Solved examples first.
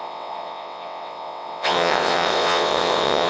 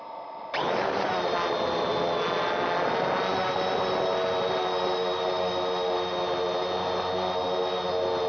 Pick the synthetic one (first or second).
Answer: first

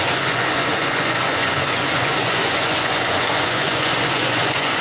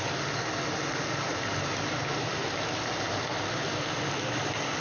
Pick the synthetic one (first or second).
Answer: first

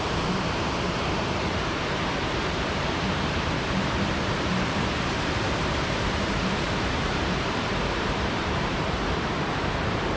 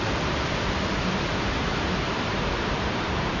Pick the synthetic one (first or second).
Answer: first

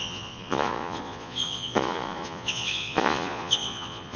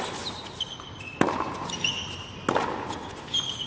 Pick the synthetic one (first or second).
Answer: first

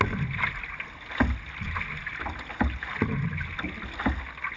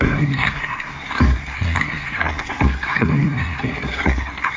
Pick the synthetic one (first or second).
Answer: second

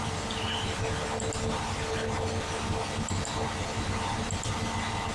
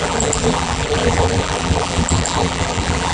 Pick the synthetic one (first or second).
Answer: second